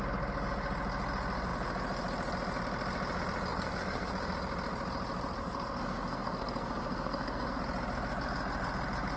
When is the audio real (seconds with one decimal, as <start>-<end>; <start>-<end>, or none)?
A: 0.0-3.5; 4.1-5.4; 7.6-9.2